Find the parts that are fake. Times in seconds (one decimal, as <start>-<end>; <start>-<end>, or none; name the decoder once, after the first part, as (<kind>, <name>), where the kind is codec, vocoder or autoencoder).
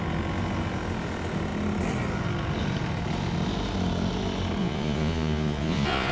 4.6-6.1 (vocoder, Vocos)